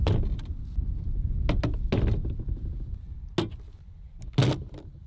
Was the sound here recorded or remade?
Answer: recorded